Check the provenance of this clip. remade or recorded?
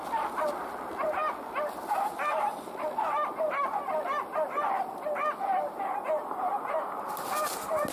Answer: recorded